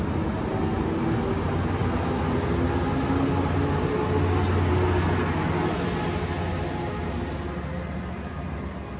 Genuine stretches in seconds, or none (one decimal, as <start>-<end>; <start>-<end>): 0.0-9.0